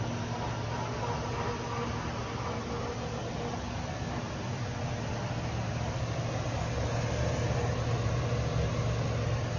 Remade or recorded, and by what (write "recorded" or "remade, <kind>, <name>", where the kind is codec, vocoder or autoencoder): recorded